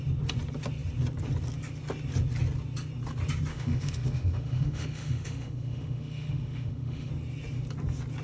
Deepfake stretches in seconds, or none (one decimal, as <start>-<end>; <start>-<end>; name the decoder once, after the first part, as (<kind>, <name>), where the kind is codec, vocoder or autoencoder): 3.5-7.1 (autoencoder, DAC-VAE)